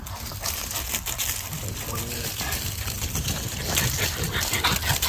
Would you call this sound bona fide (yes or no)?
yes